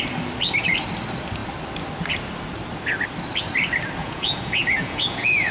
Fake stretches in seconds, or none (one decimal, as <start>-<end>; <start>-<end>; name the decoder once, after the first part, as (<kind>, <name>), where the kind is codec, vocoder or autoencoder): 4.0-5.5 (vocoder, Vocos)